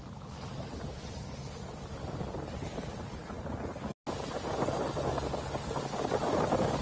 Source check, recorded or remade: recorded